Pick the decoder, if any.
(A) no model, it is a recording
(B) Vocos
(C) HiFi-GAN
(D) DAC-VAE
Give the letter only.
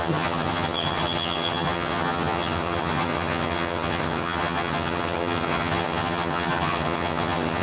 C